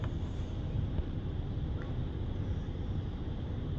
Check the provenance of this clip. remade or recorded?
remade